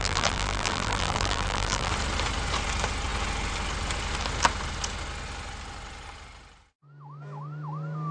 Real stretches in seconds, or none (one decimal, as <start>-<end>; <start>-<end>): 1.9-8.1